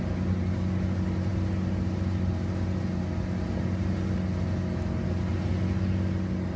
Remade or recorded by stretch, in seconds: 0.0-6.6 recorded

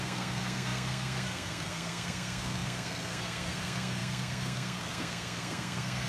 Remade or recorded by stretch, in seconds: 0.0-6.1 remade

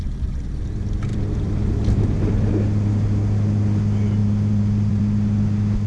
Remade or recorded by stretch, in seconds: 0.0-1.1 recorded; 1.1-2.5 remade; 2.5-4.2 recorded; 4.2-5.0 remade; 5.0-5.9 recorded

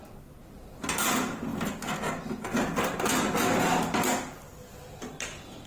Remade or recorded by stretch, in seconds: 0.0-5.7 recorded

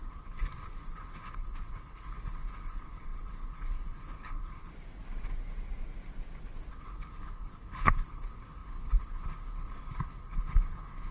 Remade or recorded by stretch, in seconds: 0.0-4.7 remade; 4.7-6.7 recorded; 6.7-11.1 remade

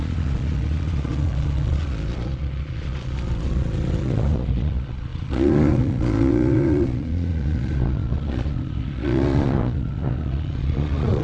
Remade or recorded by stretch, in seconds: 0.0-11.2 remade

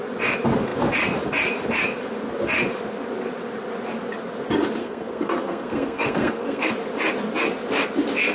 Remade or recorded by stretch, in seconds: 0.0-4.8 recorded; 4.8-6.7 remade; 6.7-8.3 recorded